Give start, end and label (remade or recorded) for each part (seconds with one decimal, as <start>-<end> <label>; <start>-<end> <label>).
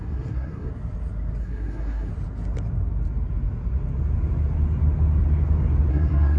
0.0-0.7 remade; 0.7-1.4 recorded; 1.4-2.1 remade; 2.1-5.9 recorded; 5.9-6.4 remade